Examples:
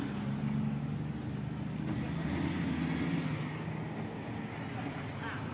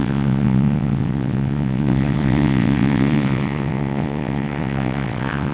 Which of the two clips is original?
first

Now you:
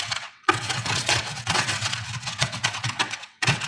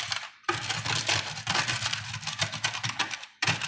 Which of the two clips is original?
second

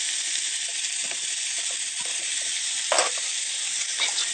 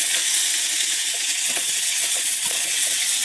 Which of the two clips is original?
first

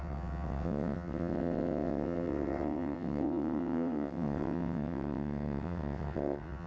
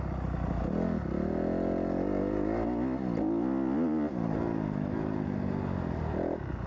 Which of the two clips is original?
second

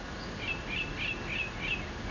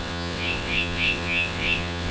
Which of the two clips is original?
first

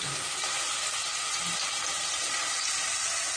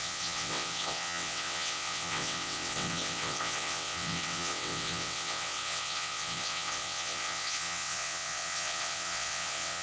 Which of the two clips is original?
first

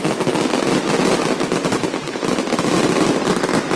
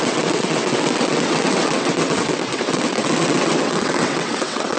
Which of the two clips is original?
first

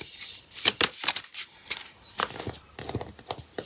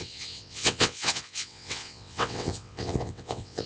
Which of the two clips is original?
first